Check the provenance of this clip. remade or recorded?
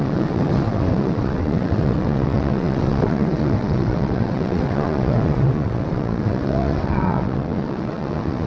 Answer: remade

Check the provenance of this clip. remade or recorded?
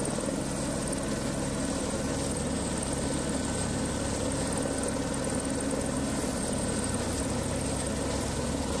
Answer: recorded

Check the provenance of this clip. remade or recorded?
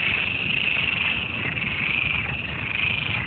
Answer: recorded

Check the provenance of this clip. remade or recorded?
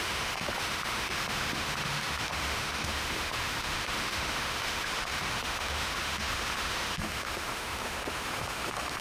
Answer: remade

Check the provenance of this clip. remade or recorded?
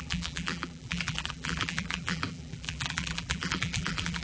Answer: remade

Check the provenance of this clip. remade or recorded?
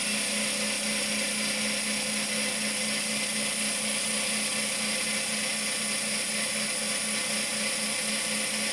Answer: recorded